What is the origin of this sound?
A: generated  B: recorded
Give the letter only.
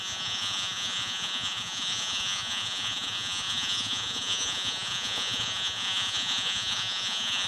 A